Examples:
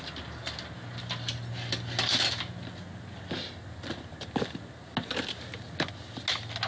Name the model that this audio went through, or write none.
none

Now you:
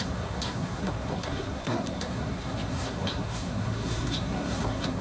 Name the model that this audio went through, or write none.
codec, SNAC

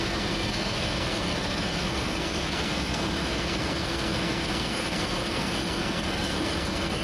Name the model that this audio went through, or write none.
codec, SNAC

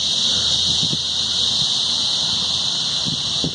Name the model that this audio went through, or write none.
none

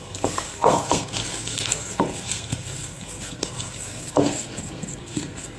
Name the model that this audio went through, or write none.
codec, SNAC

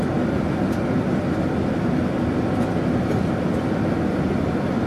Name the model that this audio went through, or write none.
none